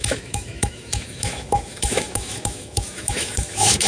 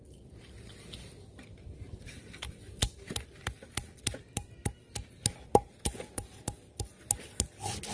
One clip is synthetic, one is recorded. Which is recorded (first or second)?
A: second